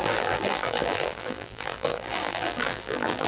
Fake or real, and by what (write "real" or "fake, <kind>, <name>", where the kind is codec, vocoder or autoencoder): fake, vocoder, BigVGAN v2